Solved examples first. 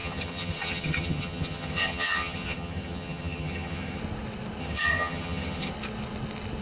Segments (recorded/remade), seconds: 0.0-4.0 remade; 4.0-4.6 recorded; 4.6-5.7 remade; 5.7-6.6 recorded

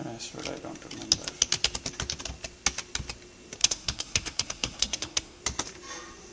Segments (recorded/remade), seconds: 0.0-3.6 recorded; 3.6-5.4 remade; 5.4-6.3 recorded